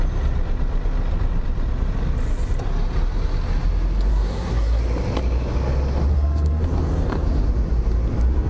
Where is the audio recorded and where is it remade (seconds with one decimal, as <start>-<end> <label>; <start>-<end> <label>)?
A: 0.0-4.1 recorded; 4.1-4.8 remade; 4.8-6.1 recorded; 6.1-6.6 remade; 6.6-8.5 recorded